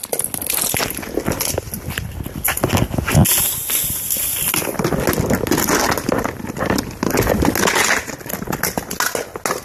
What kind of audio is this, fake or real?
real